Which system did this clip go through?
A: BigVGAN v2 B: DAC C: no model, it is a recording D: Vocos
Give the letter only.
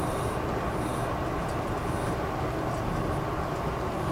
C